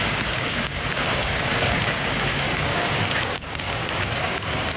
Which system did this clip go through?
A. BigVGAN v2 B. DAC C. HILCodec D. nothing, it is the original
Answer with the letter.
B